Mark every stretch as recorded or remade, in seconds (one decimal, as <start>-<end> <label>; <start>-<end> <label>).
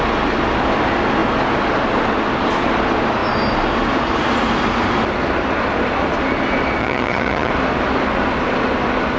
0.0-6.8 recorded; 6.8-7.5 remade; 7.5-9.2 recorded